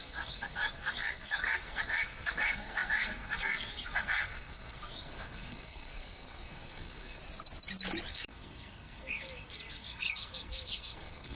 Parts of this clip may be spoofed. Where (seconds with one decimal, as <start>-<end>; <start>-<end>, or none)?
0.0-7.2; 8.1-11.4